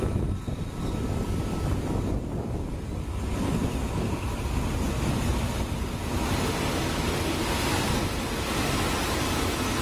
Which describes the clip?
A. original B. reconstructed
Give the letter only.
A